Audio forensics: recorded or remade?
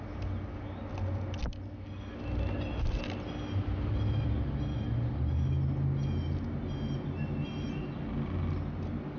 recorded